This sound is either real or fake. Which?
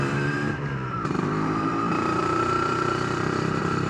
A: fake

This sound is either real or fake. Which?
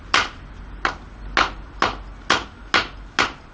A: real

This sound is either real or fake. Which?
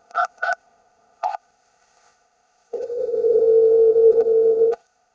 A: fake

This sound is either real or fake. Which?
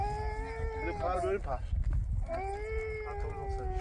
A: real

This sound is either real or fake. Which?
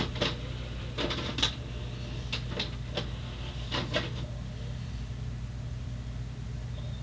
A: real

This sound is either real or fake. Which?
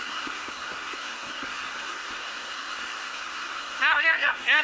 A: fake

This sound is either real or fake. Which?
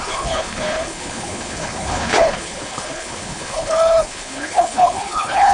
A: fake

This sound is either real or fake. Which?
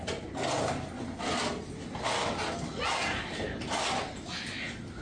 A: real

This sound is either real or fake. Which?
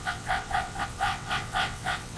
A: fake